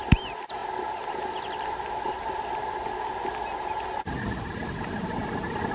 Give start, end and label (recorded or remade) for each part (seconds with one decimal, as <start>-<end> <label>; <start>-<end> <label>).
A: 0.0-5.7 recorded